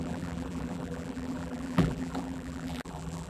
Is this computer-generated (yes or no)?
yes